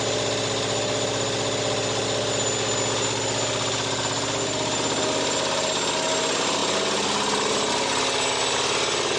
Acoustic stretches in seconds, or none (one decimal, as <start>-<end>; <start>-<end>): 0.0-9.2